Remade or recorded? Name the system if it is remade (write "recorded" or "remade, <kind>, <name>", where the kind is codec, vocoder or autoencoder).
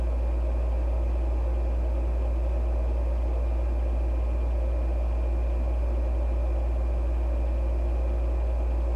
recorded